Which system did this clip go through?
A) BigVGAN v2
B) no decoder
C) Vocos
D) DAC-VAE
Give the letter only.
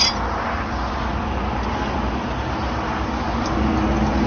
B